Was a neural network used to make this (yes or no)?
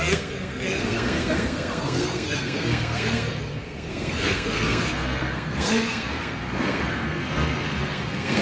yes